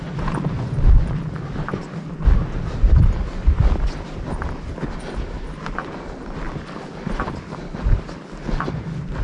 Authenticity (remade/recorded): recorded